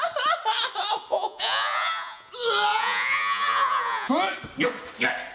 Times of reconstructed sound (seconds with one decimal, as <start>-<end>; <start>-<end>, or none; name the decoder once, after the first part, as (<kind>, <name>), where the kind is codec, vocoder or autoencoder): 1.1-2.3 (vocoder, Vocos); 2.7-4.1